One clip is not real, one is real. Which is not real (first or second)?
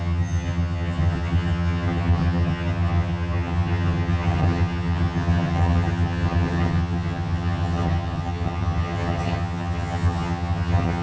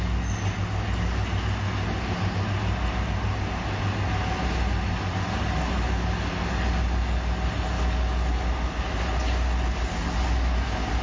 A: first